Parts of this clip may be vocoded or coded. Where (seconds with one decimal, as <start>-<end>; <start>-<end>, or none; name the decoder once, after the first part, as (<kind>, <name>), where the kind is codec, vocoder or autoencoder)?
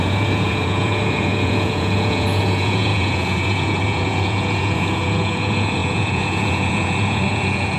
0.0-7.8 (vocoder, Vocos)